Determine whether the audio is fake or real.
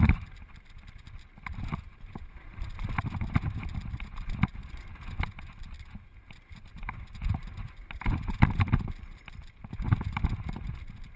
real